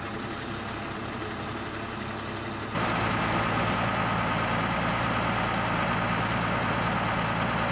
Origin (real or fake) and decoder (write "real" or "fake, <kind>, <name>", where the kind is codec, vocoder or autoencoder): real